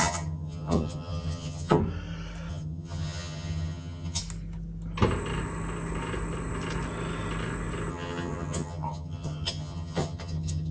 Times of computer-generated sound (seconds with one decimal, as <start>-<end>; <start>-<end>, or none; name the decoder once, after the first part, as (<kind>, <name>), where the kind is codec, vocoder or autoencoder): 0.0-1.8 (vocoder, HiFi-GAN); 2.5-4.2; 7.9-10.7